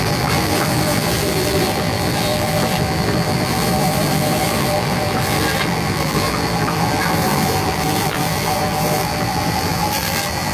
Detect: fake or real fake